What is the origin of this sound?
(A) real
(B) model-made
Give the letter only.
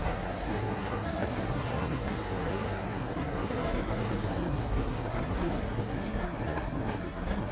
B